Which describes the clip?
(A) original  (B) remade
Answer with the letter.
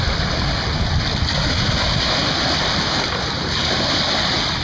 A